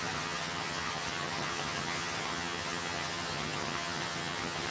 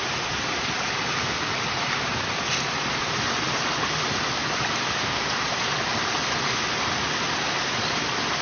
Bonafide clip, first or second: second